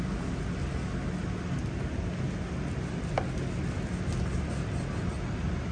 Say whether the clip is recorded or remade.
recorded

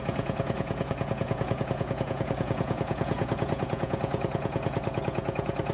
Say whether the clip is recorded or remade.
remade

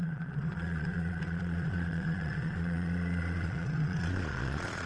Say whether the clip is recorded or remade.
remade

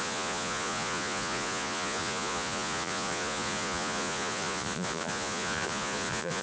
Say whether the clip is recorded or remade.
remade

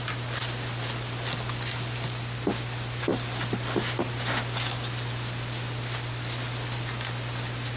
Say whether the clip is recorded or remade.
recorded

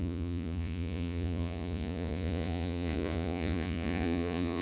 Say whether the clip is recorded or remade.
remade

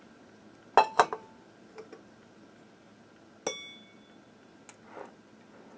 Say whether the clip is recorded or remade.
recorded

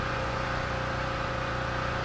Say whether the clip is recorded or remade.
remade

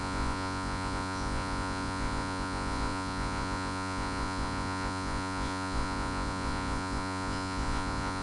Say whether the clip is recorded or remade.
remade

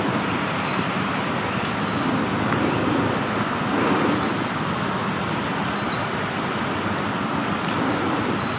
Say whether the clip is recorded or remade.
recorded